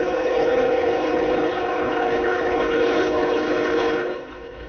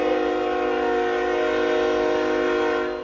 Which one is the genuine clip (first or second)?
second